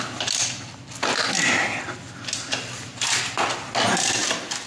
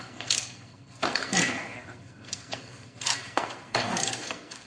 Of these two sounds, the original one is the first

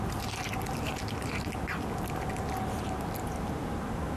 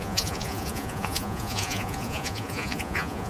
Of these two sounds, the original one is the first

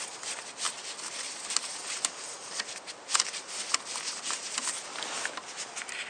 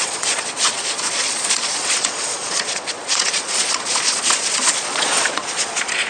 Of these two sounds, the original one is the first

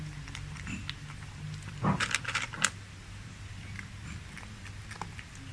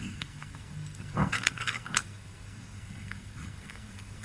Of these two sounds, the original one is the first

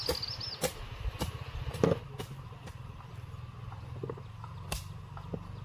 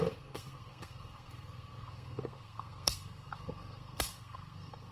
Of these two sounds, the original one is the first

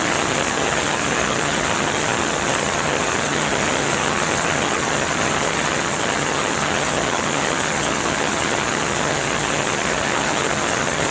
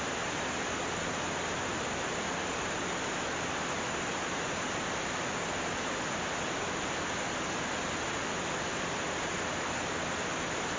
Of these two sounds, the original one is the second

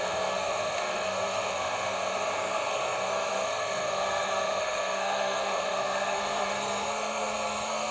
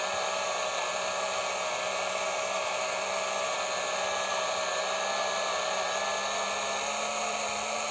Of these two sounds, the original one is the second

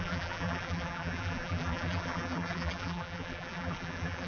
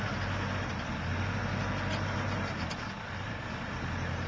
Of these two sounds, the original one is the second